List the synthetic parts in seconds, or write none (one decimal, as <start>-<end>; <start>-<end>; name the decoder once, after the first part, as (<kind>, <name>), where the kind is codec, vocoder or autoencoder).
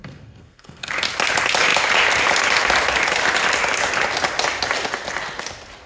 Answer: 0.0-1.0 (codec, SNAC)